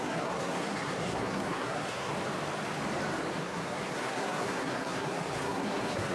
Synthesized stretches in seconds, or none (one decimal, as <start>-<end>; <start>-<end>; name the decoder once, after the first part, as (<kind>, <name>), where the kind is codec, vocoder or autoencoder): 0.0-2.1 (codec, SNAC); 3.4-6.1